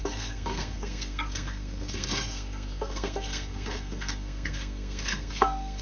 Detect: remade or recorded remade